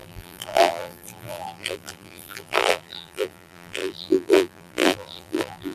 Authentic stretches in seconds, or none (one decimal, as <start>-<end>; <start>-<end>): none